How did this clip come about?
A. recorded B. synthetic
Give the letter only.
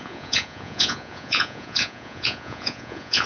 B